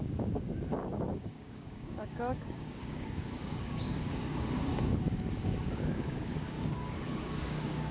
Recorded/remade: remade